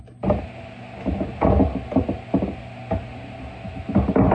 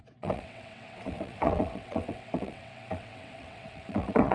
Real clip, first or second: first